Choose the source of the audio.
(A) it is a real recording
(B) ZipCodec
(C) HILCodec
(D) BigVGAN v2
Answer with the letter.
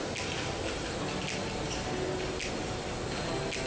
A